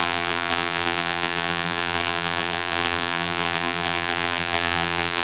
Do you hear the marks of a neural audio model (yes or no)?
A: yes